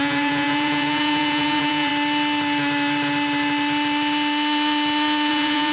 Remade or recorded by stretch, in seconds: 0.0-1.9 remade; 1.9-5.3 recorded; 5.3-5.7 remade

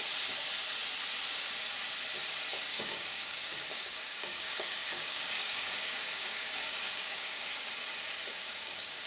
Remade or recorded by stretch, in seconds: 0.0-2.7 recorded; 2.7-7.7 remade; 7.7-8.3 recorded; 8.3-9.1 remade

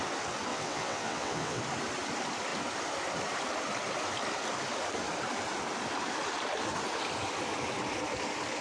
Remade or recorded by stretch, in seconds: 0.0-0.5 recorded; 0.5-1.6 remade; 1.6-8.6 recorded

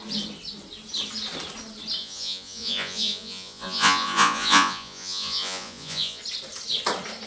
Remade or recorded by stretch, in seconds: 0.0-2.0 recorded; 2.0-6.2 remade; 6.2-7.3 recorded